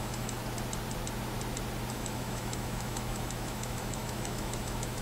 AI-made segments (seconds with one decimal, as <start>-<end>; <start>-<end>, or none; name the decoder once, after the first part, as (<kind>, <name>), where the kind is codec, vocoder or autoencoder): 0.0-0.4 (autoencoder, DAC-VAE); 1.9-5.0